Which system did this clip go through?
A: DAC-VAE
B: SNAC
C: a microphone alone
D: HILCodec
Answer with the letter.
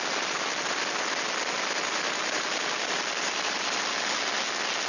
C